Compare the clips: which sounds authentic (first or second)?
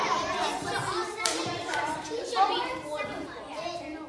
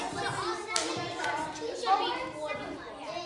second